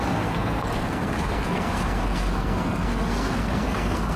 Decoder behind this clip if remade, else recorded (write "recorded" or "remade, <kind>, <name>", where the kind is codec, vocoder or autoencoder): remade, codec, SNAC